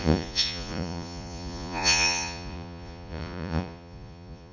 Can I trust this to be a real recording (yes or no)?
no